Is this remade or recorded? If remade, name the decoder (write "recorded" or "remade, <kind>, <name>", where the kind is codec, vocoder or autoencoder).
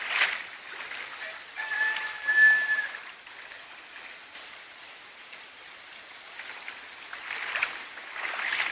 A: recorded